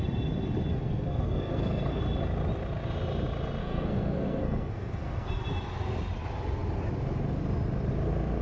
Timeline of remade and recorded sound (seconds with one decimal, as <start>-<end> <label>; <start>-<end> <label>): 0.0-0.7 recorded; 0.7-2.0 remade; 2.0-3.6 recorded; 3.6-5.3 remade; 5.3-8.4 recorded